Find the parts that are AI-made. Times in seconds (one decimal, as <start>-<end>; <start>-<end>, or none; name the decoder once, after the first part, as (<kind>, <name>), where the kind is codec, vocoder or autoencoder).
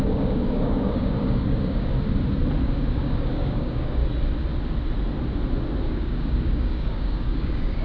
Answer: 0.0-1.9 (codec, DAC); 2.6-4.0; 5.8-7.8